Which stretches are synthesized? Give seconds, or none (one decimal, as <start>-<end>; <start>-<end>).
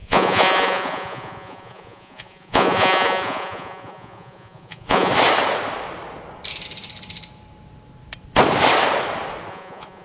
0.0-5.1; 9.5-10.0